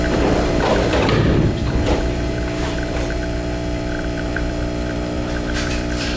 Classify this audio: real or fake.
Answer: fake